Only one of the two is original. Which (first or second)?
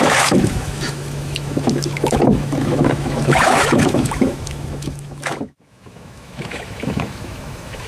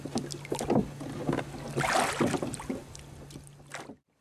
second